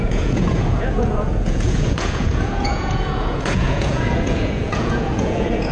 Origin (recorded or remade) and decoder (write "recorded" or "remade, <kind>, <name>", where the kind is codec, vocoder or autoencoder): remade, vocoder, Vocos